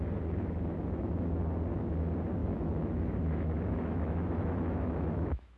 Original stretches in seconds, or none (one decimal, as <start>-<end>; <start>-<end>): 0.0-2.4